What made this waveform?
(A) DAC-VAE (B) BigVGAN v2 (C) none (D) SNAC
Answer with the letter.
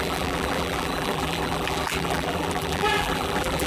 B